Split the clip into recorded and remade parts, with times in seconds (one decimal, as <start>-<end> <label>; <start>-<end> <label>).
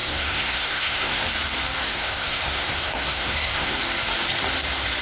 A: 0.0-1.2 remade; 1.2-1.8 recorded; 1.8-3.8 remade; 3.8-5.0 recorded